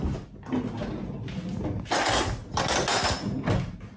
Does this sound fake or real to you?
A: real